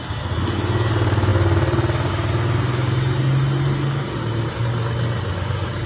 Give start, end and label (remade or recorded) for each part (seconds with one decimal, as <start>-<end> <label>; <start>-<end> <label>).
0.0-5.9 recorded